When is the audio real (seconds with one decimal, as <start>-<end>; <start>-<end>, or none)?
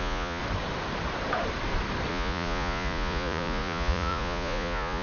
0.4-2.1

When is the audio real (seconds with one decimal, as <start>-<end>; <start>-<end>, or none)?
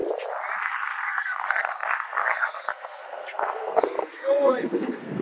0.0-0.7